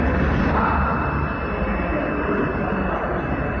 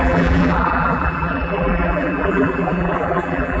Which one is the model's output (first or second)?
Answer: second